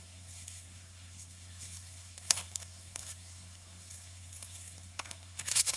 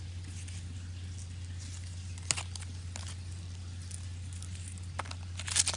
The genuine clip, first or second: second